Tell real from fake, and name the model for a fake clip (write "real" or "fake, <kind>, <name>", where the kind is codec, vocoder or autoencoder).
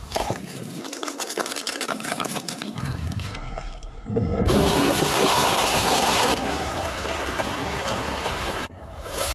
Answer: fake, codec, SNAC